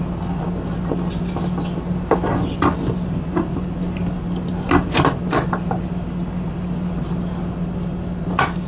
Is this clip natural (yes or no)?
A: yes